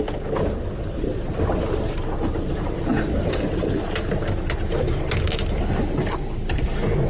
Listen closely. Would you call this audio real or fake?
real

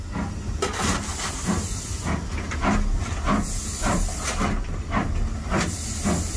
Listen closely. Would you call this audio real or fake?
real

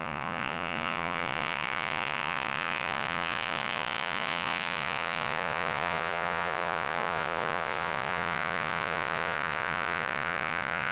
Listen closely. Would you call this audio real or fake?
fake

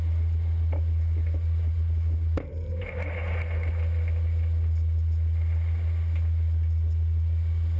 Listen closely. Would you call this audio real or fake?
real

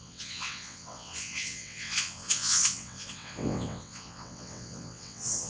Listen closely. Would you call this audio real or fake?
fake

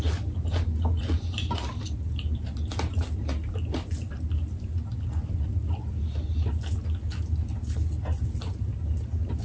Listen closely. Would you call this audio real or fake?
real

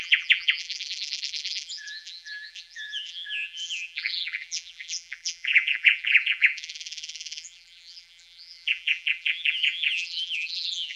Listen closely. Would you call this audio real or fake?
fake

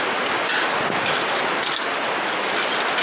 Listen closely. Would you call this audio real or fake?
real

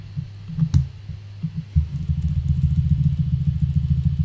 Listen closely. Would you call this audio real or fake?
real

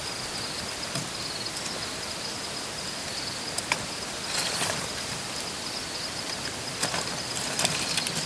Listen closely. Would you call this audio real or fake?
real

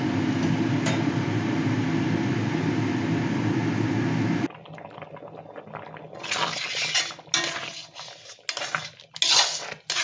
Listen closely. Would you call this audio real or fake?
real